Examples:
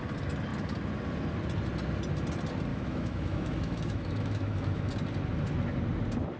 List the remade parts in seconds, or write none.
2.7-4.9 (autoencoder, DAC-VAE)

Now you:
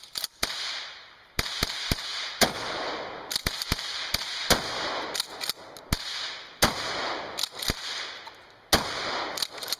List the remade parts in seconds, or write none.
none

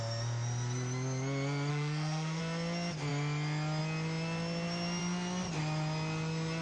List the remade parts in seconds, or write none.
1.7-2.4 (autoencoder, DAC-VAE)

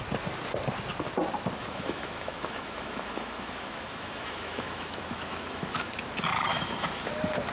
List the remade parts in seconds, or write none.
1.6-5.9 (autoencoder, DAC-VAE); 6.5-7.1

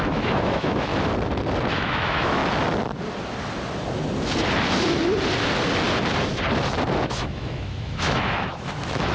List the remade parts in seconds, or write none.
0.0-0.9 (autoencoder, DAC-VAE); 1.7-2.4; 7.0-9.1